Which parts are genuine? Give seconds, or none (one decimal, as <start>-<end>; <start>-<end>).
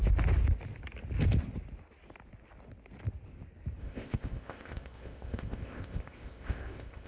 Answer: 0.0-3.8